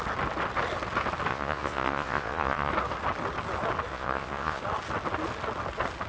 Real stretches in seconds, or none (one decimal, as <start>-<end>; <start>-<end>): 0.0-1.3; 2.7-3.9; 4.6-6.1